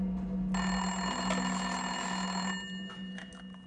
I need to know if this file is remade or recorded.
recorded